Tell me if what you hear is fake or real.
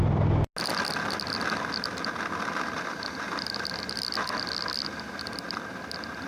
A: real